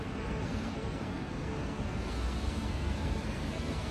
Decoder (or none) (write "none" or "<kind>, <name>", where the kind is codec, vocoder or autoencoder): codec, SNAC